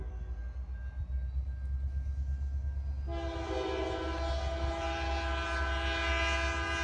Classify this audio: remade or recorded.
recorded